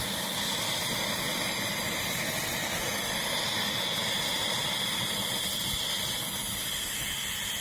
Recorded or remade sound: recorded